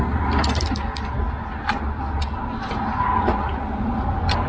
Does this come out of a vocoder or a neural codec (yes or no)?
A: no